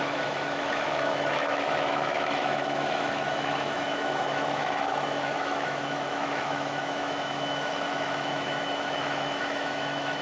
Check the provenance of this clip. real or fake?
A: fake